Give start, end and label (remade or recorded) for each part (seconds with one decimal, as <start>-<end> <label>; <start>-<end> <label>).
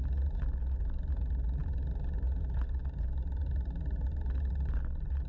0.0-5.3 recorded